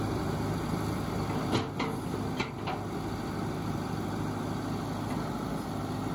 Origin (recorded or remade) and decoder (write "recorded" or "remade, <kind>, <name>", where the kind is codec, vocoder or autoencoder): recorded